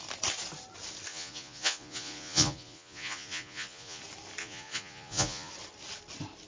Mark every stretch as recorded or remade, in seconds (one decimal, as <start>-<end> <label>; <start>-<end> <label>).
0.0-1.1 recorded; 1.1-4.0 remade; 4.0-4.4 recorded; 4.4-5.5 remade; 5.5-6.5 recorded